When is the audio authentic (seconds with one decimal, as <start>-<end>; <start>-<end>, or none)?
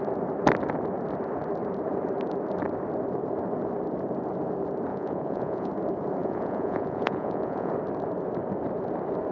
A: 0.0-4.9; 5.7-6.2; 7.7-9.3